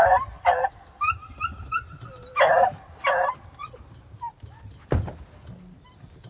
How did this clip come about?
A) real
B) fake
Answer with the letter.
A